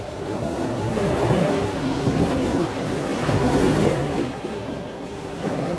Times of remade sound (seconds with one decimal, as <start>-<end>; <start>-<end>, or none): 0.0-5.8